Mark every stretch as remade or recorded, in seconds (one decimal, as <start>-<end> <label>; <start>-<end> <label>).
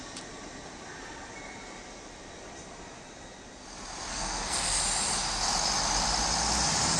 0.0-4.1 recorded; 4.1-4.8 remade; 4.8-7.0 recorded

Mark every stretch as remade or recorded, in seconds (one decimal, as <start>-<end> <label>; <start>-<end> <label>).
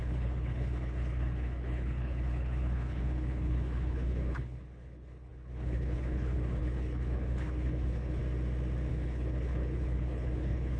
0.0-8.2 remade; 8.2-8.9 recorded; 8.9-10.8 remade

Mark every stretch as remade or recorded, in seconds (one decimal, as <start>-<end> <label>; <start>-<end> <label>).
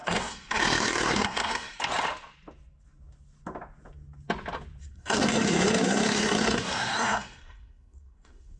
0.0-1.8 remade; 1.8-4.8 recorded; 4.8-8.6 remade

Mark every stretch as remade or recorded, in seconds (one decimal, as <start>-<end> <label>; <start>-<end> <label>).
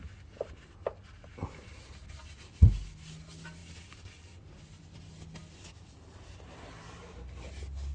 0.0-7.9 recorded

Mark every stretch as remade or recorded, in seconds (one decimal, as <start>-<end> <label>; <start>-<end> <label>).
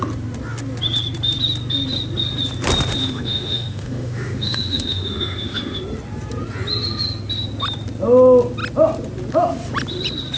0.0-3.0 recorded; 3.0-5.8 remade; 5.8-10.4 recorded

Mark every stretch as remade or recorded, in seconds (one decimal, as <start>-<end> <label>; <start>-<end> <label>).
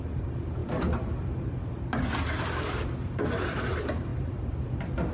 0.0-0.6 recorded; 0.6-1.5 remade; 1.5-4.1 recorded; 4.1-4.6 remade; 4.6-5.1 recorded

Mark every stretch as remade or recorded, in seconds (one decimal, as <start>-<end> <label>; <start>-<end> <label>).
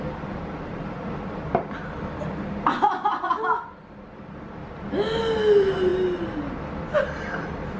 0.0-7.8 recorded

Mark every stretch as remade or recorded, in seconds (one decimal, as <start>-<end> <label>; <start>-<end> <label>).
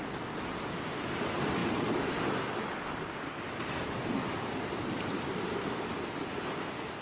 0.0-7.0 recorded